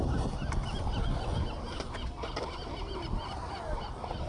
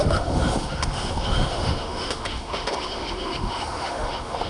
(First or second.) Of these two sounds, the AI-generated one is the second